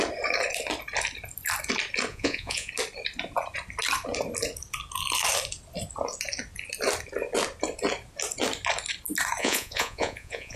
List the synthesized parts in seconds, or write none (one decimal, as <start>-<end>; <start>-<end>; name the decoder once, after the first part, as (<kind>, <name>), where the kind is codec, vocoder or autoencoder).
2.1-2.7 (vocoder, Vocos); 9.4-10.6